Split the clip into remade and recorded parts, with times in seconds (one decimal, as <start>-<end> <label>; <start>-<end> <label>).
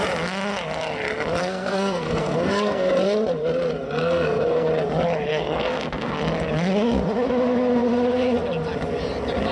0.0-1.4 recorded; 1.4-2.9 remade; 2.9-4.0 recorded; 4.0-4.7 remade; 4.7-5.3 recorded; 5.3-6.1 remade; 6.1-9.5 recorded